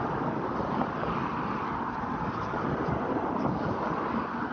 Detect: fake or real real